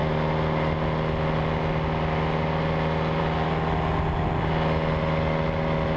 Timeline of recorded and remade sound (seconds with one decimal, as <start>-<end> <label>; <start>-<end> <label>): 0.0-6.0 recorded